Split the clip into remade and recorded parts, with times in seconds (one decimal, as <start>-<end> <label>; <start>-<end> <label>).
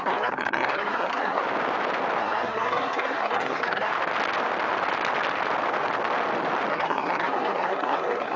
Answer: 0.0-1.4 remade; 1.4-2.2 recorded; 2.2-3.9 remade; 3.9-6.7 recorded; 6.7-8.4 remade